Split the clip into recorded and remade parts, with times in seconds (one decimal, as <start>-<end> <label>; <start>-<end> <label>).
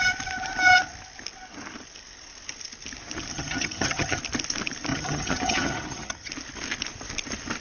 0.0-3.3 recorded; 3.3-4.2 remade; 4.2-4.9 recorded; 4.9-6.3 remade; 6.3-7.6 recorded